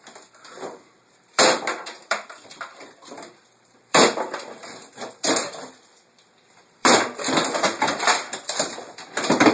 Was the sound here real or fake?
fake